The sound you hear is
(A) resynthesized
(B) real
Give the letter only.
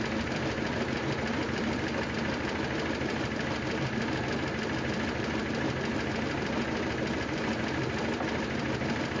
B